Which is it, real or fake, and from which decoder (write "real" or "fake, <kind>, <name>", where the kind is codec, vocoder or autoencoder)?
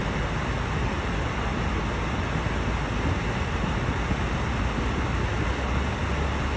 real